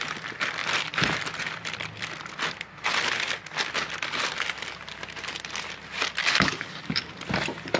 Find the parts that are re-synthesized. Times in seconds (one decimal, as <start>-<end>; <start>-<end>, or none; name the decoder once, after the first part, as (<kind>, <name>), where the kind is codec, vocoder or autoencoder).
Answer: 6.2-7.1 (codec, DAC)